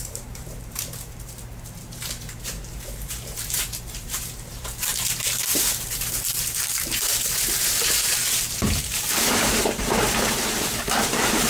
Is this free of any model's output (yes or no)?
no